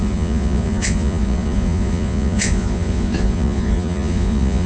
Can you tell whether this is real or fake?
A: fake